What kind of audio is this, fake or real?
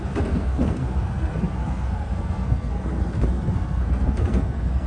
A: fake